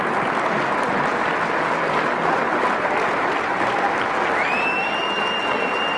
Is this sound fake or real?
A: real